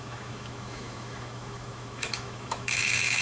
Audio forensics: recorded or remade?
remade